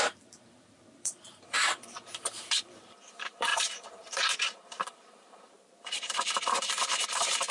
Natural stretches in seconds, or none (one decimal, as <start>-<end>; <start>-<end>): none